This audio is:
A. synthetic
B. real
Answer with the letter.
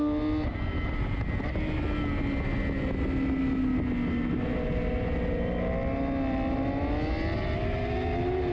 B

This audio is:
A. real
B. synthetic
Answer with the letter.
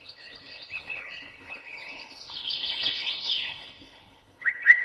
B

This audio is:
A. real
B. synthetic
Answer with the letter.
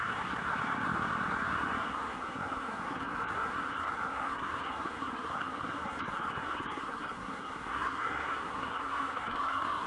B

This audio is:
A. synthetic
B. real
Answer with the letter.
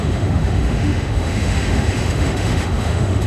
A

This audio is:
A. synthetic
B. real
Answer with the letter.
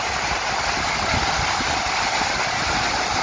B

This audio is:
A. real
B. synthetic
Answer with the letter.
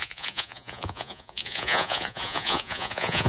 B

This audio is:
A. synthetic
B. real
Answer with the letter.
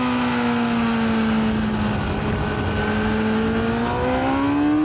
B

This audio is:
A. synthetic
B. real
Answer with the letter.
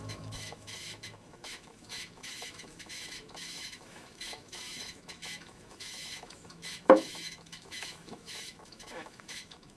A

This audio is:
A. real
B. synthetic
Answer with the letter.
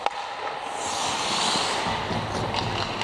A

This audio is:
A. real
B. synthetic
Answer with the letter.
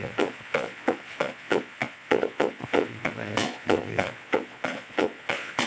B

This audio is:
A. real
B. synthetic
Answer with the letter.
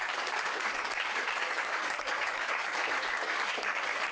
B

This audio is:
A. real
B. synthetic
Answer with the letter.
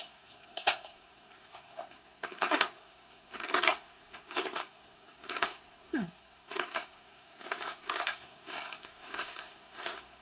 B